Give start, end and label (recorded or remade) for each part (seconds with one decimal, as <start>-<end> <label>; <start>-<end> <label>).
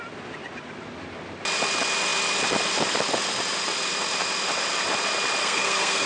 0.0-5.4 recorded; 5.4-6.1 remade